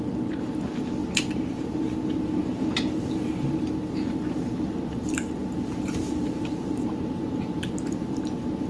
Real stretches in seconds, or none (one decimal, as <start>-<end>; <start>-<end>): 0.0-1.0; 3.7-5.4; 8.2-8.7